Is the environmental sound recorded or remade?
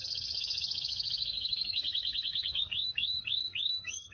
remade